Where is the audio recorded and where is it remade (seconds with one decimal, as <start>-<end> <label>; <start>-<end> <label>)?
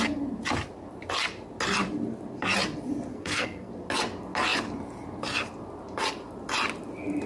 0.0-3.1 recorded; 3.1-3.7 remade; 3.7-7.3 recorded